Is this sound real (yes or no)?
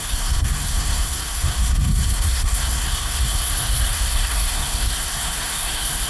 no